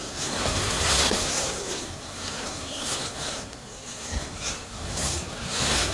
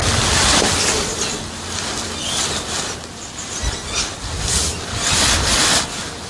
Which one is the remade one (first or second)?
first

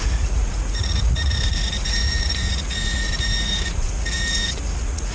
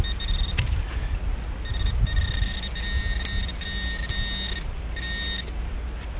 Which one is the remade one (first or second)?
first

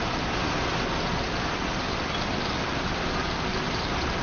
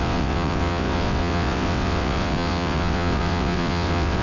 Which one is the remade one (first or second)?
second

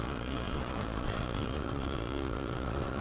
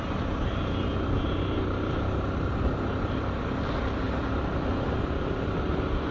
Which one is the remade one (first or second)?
first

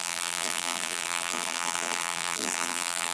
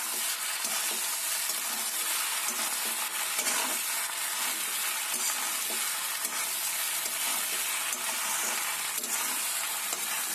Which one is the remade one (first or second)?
first